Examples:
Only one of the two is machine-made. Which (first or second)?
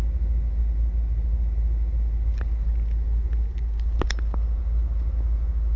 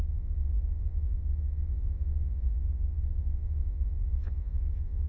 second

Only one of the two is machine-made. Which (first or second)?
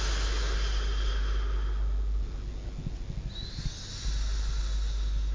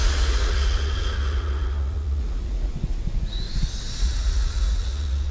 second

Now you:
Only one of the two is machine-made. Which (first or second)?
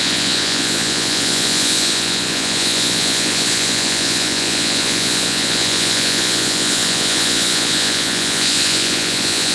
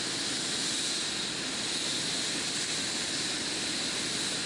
first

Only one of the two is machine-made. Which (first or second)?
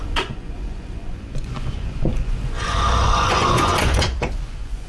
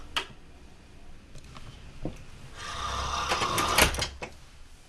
first